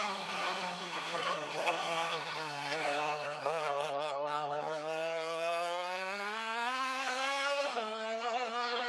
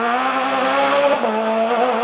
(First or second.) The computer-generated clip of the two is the first